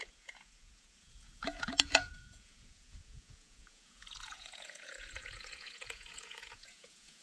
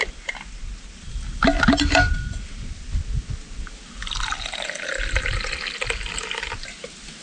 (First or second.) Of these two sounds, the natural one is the second